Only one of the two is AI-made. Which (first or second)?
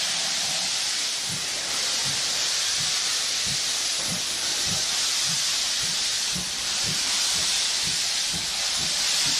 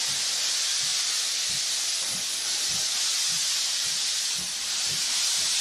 first